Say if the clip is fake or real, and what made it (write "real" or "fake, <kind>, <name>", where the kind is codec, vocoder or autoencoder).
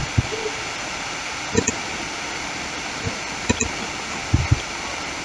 real